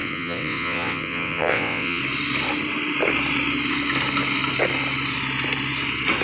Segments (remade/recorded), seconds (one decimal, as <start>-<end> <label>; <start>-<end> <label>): 0.0-2.0 remade; 2.0-6.2 recorded